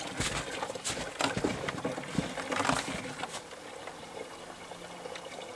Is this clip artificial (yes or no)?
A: no